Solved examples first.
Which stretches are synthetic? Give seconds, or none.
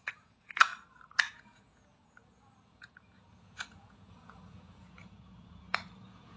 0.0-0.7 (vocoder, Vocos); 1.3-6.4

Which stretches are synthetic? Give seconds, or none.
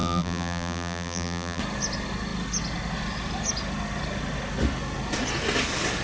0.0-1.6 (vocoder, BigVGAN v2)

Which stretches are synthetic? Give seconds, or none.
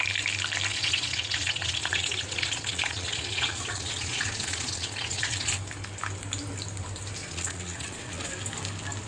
0.7-5.5 (vocoder, Vocos); 7.2-8.3